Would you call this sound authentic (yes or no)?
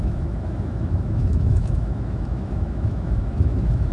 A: no